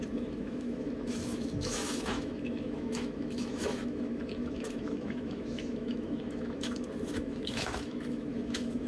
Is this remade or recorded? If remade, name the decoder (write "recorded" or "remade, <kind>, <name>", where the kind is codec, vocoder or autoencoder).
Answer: remade, autoencoder, DAC-VAE